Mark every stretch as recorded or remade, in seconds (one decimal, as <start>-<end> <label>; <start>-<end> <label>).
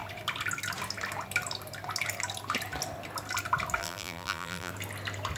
0.0-3.8 recorded; 3.8-4.7 remade; 4.7-5.4 recorded